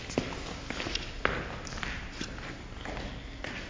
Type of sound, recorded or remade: recorded